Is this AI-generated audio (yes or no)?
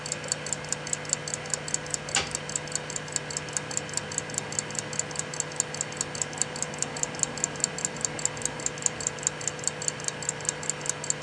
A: no